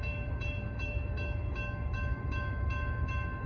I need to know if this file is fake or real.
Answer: fake